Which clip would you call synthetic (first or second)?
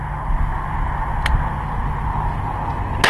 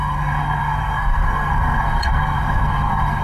second